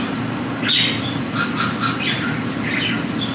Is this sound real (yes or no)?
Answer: yes